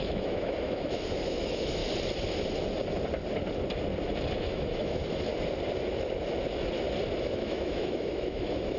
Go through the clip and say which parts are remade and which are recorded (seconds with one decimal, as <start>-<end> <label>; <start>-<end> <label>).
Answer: 0.0-1.8 remade; 1.8-4.4 recorded; 4.4-5.3 remade; 5.3-7.2 recorded; 7.2-8.8 remade